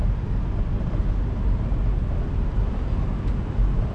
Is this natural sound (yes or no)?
yes